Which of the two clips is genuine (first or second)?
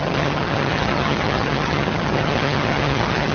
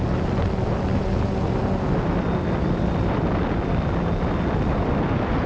second